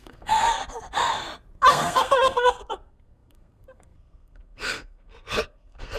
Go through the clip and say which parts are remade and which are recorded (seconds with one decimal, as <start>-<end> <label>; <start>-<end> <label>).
0.0-0.6 remade; 0.6-1.7 recorded; 1.7-6.0 remade